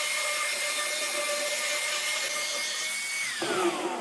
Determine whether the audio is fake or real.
real